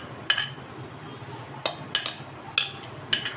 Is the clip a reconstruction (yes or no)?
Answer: no